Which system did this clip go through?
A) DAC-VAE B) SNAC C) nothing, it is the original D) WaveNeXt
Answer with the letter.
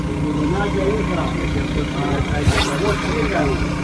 C